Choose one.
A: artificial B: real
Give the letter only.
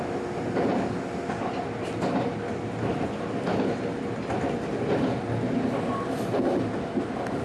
B